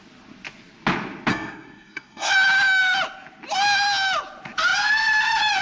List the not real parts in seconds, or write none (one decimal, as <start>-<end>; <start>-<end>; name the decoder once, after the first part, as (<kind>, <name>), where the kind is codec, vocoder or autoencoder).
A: 1.3-2.3 (codec, SNAC)